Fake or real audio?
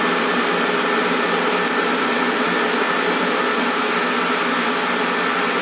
real